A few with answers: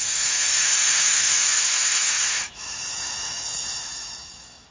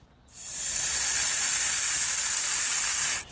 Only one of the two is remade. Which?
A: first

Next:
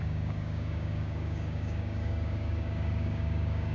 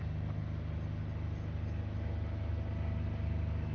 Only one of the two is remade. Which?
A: first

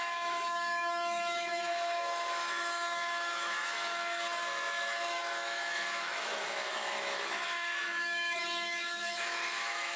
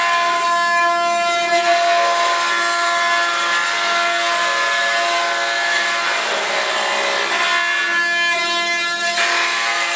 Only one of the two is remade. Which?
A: first